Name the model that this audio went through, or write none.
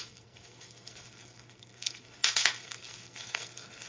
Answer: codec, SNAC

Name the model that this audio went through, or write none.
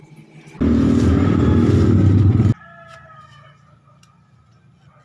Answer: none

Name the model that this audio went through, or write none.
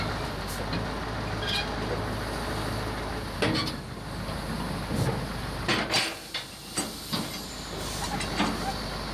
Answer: none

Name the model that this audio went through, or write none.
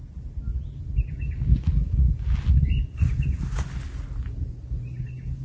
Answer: none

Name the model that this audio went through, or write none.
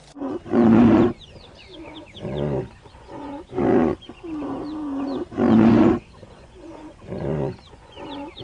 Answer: vocoder, Vocos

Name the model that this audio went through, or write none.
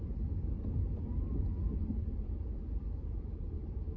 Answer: none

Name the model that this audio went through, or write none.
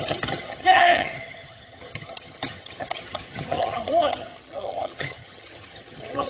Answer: vocoder, HiFi-GAN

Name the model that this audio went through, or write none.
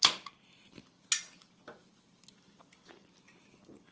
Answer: none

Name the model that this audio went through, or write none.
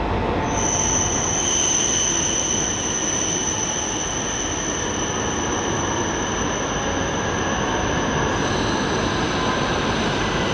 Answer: none